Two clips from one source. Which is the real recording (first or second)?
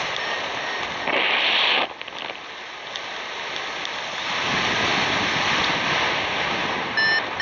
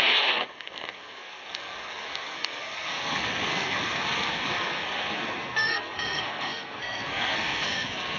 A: first